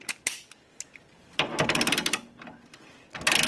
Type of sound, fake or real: real